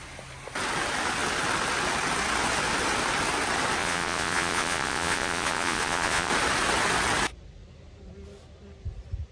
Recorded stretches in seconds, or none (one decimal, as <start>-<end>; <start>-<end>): 0.0-3.8; 6.3-9.3